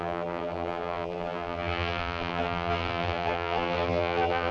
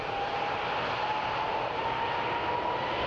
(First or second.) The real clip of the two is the second